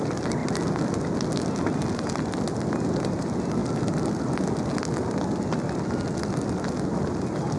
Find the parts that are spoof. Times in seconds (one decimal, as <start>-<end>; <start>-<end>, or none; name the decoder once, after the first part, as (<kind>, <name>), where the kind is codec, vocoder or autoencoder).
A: none